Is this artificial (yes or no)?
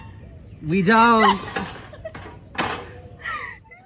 no